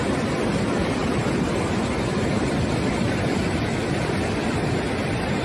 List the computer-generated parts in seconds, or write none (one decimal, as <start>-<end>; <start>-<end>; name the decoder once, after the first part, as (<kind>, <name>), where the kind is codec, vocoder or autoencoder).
0.0-5.4 (vocoder, BigVGAN v2)